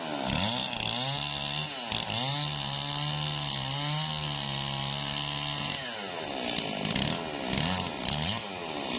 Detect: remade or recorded recorded